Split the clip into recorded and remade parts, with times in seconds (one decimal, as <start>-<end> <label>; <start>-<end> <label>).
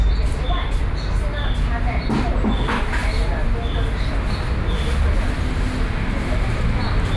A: 0.0-7.2 recorded